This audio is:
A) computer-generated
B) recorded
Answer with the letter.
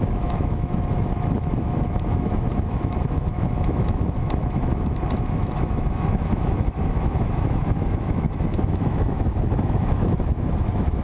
A